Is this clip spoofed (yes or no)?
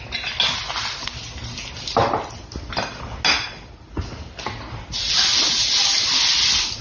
no